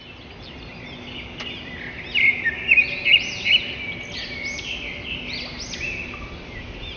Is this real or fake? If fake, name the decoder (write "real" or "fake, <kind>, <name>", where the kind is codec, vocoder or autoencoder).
real